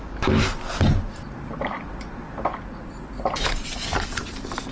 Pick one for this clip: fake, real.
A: fake